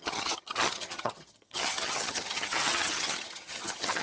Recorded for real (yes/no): no